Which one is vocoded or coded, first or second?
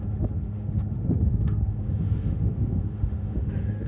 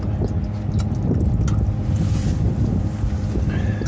first